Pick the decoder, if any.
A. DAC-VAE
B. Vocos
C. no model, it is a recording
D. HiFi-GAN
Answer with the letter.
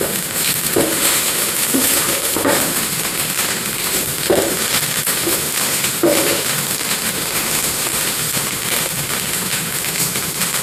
A